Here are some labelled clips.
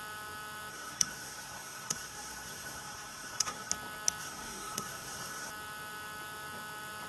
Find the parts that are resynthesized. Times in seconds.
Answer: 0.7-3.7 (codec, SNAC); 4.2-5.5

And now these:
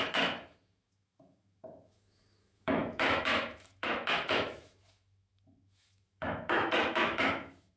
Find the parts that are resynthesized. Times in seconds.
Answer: 0.0-7.8 (autoencoder, DAC-VAE)

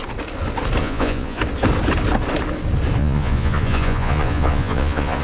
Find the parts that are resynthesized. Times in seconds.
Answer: 0.8-1.4 (vocoder, Vocos); 3.0-5.2